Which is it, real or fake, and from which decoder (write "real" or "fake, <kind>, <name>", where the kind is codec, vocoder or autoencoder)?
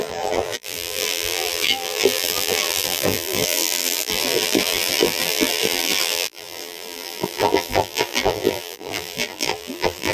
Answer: fake, vocoder, BigVGAN v2